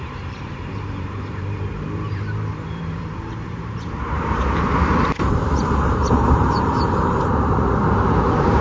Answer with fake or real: fake